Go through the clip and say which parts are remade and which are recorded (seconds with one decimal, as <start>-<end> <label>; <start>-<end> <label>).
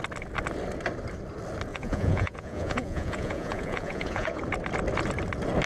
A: 0.0-1.7 recorded; 1.7-4.4 remade; 4.4-5.7 recorded